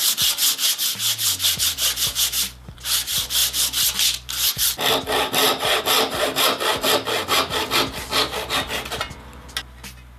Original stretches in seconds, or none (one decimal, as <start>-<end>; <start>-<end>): 0.0-10.2